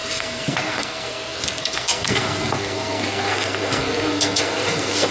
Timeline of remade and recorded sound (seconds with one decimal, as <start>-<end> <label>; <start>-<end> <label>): 0.0-5.1 remade